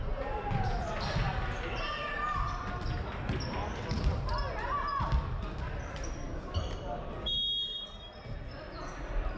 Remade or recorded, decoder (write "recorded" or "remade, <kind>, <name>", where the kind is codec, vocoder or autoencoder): recorded